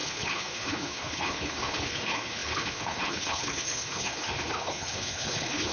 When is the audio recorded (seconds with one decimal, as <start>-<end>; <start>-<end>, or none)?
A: none

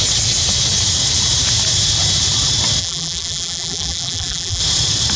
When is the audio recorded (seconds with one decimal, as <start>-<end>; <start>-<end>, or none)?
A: 0.0-2.8; 4.6-5.2

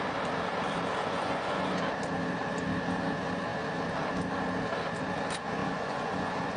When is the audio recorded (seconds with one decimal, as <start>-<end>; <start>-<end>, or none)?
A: 0.0-1.0; 1.7-5.6

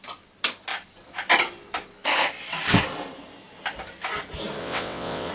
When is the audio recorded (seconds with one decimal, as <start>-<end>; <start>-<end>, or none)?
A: 0.0-4.6

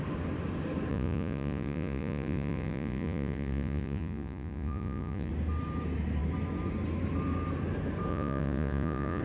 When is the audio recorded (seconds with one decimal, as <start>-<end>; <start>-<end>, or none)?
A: 0.0-0.9; 5.3-8.1

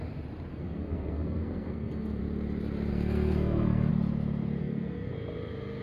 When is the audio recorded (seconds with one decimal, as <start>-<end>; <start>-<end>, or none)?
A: 0.0-0.5; 2.2-2.9; 3.9-4.6; 5.1-5.8

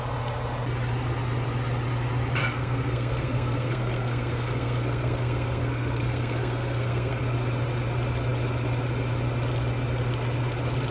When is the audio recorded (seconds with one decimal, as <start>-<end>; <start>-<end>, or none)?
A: 0.0-2.4; 7.2-10.9